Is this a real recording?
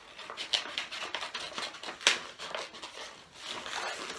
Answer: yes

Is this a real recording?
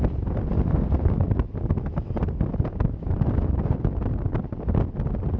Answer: yes